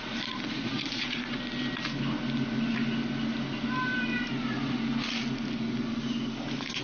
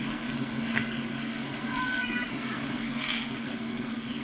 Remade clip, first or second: second